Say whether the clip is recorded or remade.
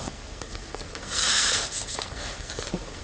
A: remade